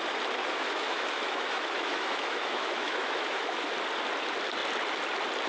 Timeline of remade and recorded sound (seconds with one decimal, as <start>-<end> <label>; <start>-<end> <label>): 0.0-0.4 recorded; 0.4-3.7 remade; 3.7-5.5 recorded